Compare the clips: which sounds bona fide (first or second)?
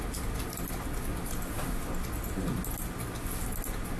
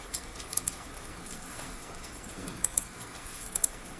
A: first